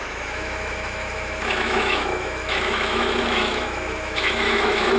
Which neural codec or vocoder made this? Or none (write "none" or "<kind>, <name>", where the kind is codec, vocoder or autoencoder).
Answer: autoencoder, DAC-VAE